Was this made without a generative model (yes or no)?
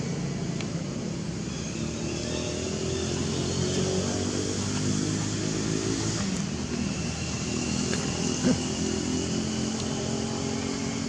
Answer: yes